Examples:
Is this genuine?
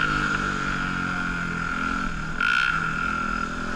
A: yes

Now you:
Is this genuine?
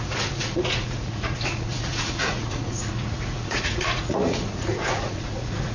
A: no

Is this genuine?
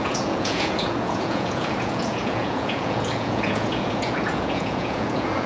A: no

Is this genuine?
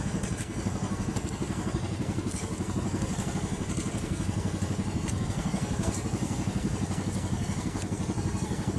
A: no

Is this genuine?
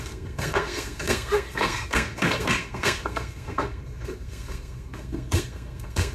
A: no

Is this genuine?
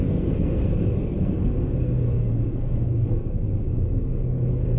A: no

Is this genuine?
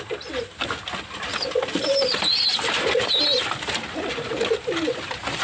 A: yes